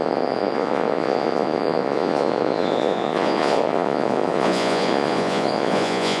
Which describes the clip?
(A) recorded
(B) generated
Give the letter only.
B